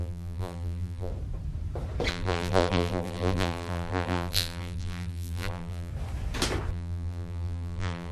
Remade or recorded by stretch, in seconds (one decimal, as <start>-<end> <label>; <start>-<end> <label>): 0.0-1.1 remade; 1.1-2.1 recorded; 2.1-5.9 remade; 5.9-6.7 recorded; 6.7-8.1 remade